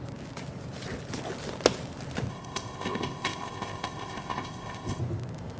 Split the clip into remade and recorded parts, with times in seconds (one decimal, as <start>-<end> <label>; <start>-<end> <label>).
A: 0.0-2.3 recorded; 2.3-5.0 remade; 5.0-5.6 recorded